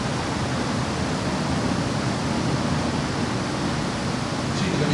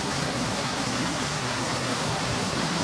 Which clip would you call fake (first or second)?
second